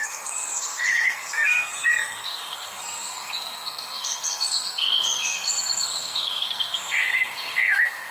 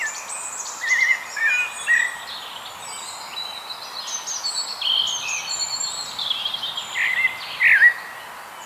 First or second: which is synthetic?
first